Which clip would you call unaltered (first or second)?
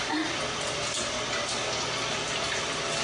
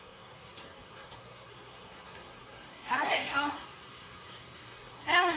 first